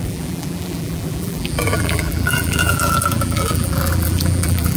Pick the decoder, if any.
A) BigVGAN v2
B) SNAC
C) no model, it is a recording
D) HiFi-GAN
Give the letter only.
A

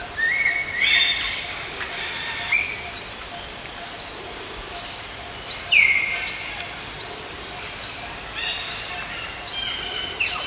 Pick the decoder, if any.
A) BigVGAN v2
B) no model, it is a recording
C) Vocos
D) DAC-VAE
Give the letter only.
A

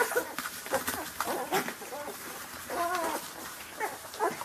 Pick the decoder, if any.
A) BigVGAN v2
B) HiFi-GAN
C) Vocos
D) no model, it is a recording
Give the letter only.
A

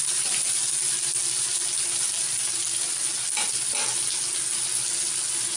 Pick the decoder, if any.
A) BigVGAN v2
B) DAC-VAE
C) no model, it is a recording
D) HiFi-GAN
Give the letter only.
C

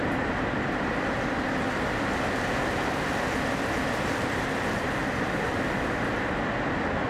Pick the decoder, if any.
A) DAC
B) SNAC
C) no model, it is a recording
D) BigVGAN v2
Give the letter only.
C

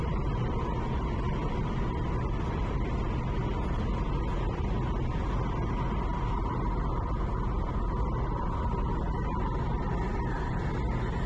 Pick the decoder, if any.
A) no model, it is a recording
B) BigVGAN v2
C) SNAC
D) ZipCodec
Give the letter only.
A